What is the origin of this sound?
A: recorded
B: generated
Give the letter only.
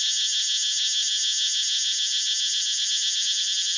A